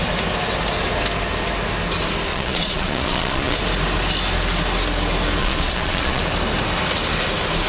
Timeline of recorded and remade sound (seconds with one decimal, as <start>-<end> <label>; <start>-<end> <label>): 0.0-2.3 recorded; 2.3-3.6 remade; 3.6-5.4 recorded; 5.4-6.2 remade; 6.2-7.7 recorded